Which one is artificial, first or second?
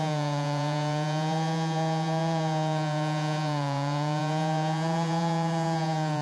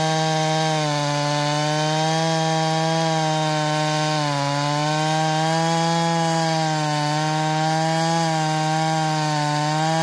first